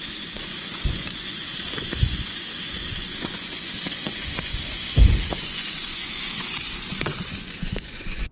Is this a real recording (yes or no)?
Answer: no